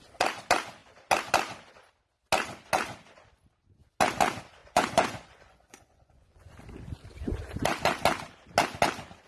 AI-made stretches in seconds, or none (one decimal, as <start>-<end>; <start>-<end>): 4.6-6.5